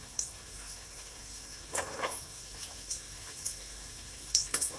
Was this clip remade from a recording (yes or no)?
yes